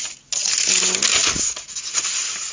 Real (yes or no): yes